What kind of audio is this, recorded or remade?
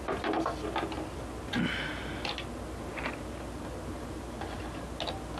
recorded